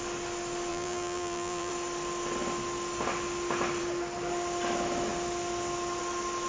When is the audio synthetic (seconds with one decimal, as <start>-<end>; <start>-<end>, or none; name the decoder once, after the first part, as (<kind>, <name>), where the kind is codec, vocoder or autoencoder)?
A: 0.7-1.7 (vocoder, BigVGAN v2)